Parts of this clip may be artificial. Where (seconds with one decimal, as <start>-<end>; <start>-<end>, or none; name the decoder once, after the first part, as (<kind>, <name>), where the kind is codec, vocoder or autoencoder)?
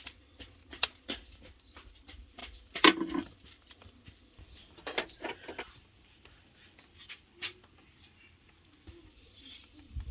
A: 0.0-10.1 (vocoder, BigVGAN v2)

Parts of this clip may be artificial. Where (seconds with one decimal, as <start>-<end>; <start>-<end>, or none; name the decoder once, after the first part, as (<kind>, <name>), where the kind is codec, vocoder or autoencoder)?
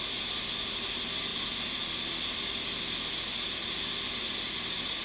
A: none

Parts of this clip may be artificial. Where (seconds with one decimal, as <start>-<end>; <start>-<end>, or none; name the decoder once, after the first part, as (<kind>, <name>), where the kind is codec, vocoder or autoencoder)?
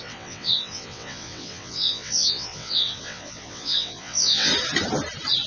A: 0.0-4.5 (vocoder, WaveNeXt)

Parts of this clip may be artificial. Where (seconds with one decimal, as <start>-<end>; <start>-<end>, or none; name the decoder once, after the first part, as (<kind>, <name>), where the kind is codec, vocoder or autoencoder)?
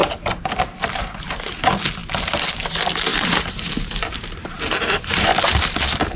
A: 3.1-6.2 (vocoder, BigVGAN v2)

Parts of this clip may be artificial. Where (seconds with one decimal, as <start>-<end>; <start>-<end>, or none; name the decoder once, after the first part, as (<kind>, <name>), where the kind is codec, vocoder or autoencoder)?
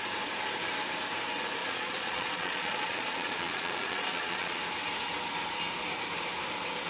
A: 1.6-4.6 (vocoder, Vocos)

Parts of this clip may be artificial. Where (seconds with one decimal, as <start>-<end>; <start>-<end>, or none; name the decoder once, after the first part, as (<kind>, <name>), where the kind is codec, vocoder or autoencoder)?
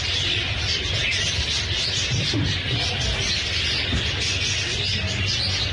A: none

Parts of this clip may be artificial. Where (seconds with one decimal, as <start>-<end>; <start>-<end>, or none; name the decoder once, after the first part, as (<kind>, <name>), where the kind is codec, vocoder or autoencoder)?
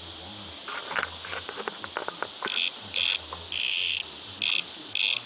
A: none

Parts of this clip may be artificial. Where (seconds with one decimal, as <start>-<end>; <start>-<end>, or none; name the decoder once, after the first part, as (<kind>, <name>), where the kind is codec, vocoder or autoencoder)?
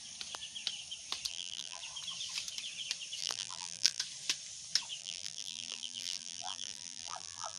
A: 1.3-1.8 (vocoder, BigVGAN v2); 3.2-4.0; 5.0-7.6